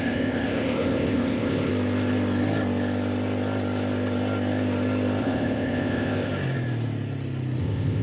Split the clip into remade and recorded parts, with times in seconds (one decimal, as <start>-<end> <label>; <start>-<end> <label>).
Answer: 0.0-1.7 remade; 1.7-5.2 recorded; 5.2-6.3 remade; 6.3-7.6 recorded; 7.6-8.0 remade